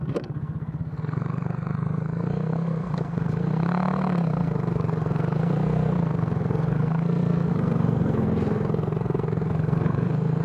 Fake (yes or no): yes